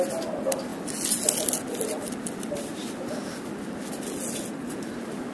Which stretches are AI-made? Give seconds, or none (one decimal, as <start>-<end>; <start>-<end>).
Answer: none

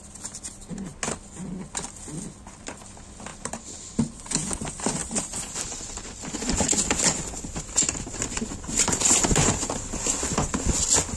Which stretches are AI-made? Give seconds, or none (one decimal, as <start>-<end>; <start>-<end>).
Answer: 3.3-3.9; 5.0-9.0